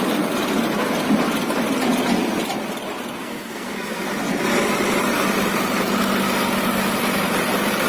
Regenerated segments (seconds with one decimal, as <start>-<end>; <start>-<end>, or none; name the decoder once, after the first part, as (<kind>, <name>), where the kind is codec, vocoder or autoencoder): 3.2-4.1 (codec, SNAC)